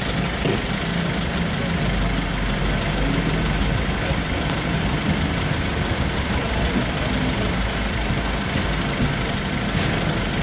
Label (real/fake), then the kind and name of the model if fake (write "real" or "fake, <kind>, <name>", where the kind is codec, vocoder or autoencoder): real